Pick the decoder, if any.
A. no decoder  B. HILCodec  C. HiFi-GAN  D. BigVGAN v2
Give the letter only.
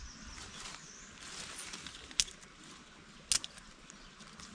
A